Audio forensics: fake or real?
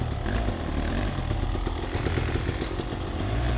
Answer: real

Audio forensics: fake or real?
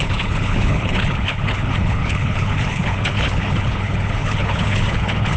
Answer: fake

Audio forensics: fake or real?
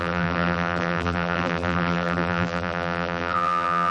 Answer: fake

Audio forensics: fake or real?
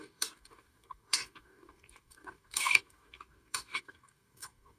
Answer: fake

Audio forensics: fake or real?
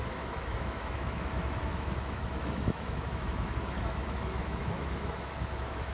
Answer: fake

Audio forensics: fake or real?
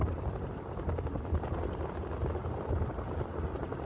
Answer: real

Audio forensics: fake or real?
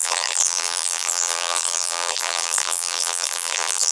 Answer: fake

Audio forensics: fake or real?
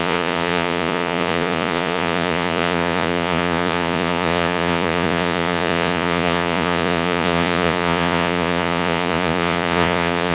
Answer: fake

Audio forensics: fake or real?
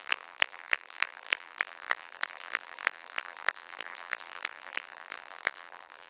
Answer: fake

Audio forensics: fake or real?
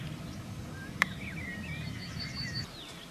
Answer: real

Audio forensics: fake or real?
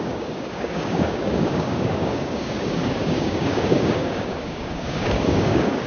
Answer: fake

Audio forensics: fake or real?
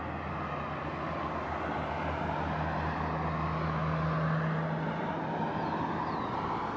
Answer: real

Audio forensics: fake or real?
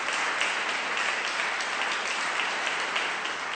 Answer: real